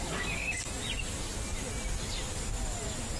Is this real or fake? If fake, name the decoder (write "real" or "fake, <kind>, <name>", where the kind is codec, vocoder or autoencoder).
real